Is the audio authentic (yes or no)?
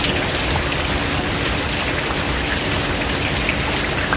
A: yes